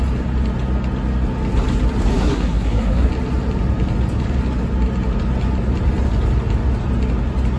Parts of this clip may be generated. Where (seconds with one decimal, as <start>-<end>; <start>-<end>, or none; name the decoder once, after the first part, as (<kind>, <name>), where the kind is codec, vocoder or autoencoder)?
2.1-3.1 (codec, SNAC)